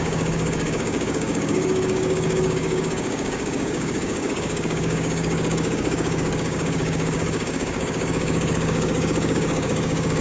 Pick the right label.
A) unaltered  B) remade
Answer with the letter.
B